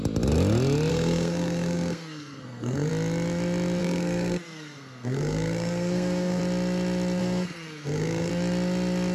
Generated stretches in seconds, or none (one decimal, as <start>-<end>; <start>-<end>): 0.9-2.9; 3.8-6.4; 7.2-8.3